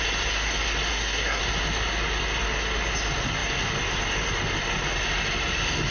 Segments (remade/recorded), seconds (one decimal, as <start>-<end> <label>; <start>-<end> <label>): 0.0-0.9 recorded; 0.9-1.4 remade; 1.4-5.9 recorded